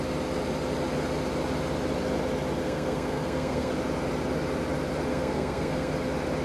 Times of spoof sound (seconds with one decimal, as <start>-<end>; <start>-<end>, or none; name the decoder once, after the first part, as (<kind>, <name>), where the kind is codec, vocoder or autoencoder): 2.6-3.7 (codec, SNAC); 5.1-5.9